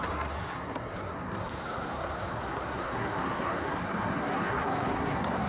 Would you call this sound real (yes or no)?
no